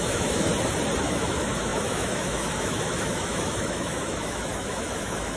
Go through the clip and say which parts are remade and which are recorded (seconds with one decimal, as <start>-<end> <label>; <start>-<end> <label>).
0.0-0.5 remade; 0.5-1.0 recorded; 1.0-5.4 remade